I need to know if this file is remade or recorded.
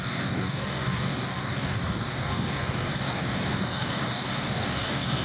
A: remade